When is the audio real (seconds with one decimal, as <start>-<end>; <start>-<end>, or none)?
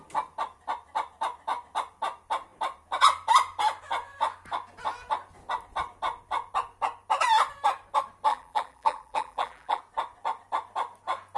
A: 0.0-8.3; 9.8-11.4